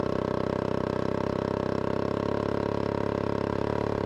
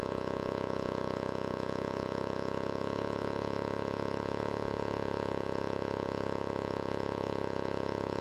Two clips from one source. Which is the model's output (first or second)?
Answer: second